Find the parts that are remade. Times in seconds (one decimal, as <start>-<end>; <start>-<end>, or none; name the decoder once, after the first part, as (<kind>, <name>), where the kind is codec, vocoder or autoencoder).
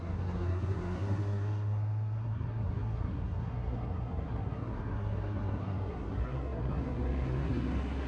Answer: 0.0-8.1 (codec, SNAC)